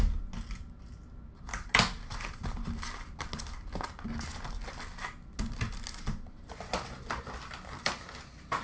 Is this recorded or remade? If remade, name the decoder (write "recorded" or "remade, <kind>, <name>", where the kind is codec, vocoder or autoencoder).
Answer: recorded